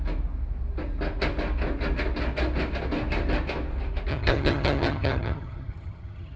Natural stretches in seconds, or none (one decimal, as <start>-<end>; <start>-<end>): 0.0-4.1